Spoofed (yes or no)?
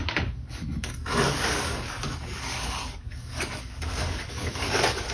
yes